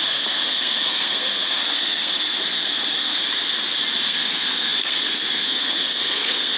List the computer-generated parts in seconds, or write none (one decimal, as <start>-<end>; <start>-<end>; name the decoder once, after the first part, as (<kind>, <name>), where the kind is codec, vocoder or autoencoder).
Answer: 0.0-3.2 (codec, SNAC); 4.0-6.6